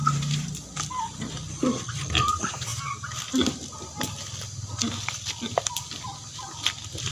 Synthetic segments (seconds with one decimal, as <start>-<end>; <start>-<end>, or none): 0.0-0.5